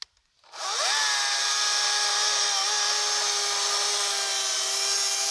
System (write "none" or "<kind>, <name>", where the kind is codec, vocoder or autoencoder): none